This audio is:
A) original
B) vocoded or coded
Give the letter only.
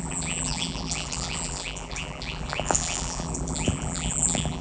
B